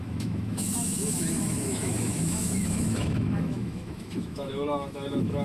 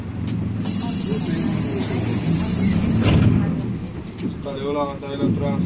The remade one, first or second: first